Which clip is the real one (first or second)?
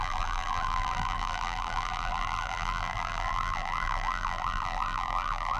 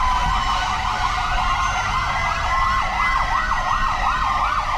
second